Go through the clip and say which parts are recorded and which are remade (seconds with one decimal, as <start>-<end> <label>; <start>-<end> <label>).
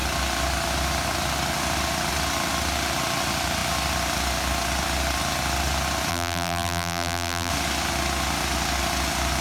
0.0-6.1 recorded; 6.1-7.5 remade; 7.5-9.4 recorded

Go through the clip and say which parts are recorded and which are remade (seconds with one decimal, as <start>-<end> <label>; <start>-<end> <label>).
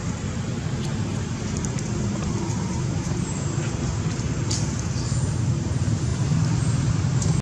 0.0-0.9 recorded; 0.9-3.7 remade; 3.7-6.1 recorded; 6.1-6.9 remade; 6.9-7.4 recorded